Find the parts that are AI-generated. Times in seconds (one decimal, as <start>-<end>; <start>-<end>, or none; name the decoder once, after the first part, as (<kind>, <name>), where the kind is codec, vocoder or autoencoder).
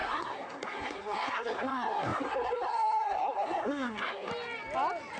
0.0-4.3 (codec, SNAC)